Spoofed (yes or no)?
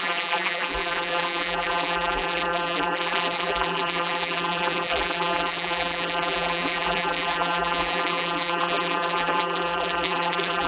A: yes